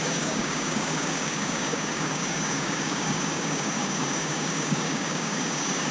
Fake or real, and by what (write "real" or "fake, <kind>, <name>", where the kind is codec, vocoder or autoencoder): fake, codec, DAC